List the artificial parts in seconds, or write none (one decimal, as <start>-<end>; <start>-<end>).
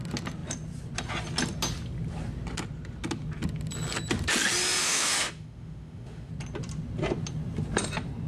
4.8-6.3